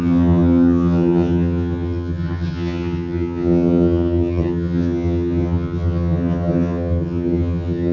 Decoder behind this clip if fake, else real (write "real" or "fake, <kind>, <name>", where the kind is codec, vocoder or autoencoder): fake, vocoder, HiFi-GAN